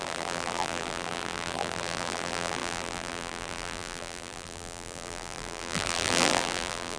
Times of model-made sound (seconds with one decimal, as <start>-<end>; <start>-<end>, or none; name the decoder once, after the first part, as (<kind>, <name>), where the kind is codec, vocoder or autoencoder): 0.0-7.0 (vocoder, BigVGAN v2)